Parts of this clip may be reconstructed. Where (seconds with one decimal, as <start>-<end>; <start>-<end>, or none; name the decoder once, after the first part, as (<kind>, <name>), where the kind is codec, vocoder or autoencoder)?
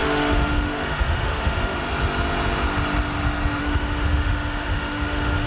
0.0-1.8 (autoencoder, DAC-VAE); 3.6-5.5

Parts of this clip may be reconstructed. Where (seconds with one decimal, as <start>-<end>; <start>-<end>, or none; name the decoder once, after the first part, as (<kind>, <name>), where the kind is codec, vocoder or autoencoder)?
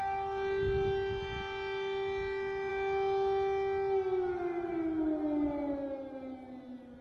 none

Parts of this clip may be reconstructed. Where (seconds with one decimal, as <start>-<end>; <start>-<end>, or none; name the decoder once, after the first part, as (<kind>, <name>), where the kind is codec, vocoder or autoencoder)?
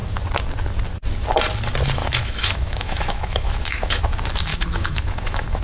2.0-4.0 (autoencoder, DAC-VAE); 4.5-5.6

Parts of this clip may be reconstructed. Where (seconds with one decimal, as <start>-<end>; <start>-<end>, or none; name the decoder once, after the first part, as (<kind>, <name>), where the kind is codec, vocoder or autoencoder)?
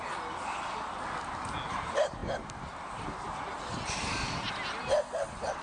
none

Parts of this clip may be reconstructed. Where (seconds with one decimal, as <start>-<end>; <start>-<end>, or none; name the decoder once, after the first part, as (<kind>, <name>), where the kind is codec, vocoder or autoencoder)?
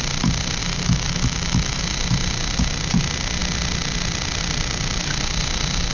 0.6-1.8 (autoencoder, DAC-VAE)